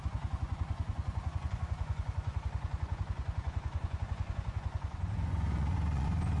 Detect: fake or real fake